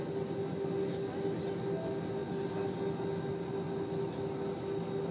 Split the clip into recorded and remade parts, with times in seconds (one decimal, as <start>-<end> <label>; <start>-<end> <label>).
0.0-5.1 recorded